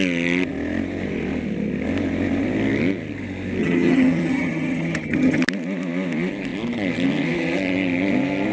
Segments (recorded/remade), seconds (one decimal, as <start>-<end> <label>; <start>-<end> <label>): 0.0-3.6 recorded; 3.6-5.4 remade; 5.4-8.5 recorded